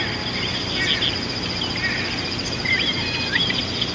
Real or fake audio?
real